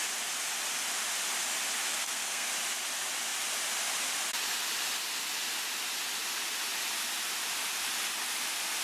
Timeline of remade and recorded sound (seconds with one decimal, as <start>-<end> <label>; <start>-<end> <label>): 0.0-1.9 recorded; 1.9-2.5 remade; 2.5-8.8 recorded